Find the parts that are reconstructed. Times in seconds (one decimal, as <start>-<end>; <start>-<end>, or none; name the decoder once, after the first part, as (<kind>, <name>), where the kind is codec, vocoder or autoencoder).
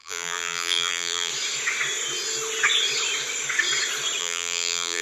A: 0.0-1.3 (vocoder, BigVGAN v2); 4.2-5.0